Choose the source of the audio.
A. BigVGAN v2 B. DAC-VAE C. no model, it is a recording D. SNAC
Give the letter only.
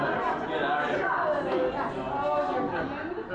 C